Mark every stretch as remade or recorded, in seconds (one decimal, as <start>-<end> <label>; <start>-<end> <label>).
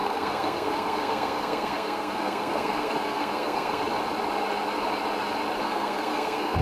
0.0-3.8 remade; 3.8-5.6 recorded; 5.6-6.6 remade